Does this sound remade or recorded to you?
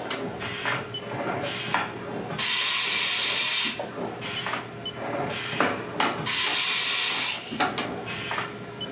recorded